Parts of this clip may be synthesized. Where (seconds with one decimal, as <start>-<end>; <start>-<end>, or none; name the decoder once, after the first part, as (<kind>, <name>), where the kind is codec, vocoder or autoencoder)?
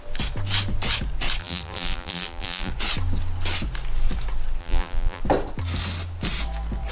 1.4-2.7 (vocoder, BigVGAN v2); 4.6-5.2